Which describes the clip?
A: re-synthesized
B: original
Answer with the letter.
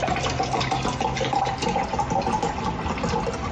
B